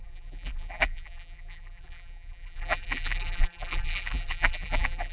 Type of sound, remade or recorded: remade